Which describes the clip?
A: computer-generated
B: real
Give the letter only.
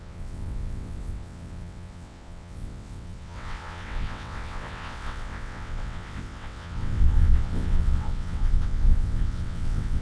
A